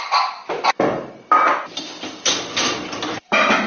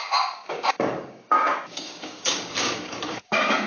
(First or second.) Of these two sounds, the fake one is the second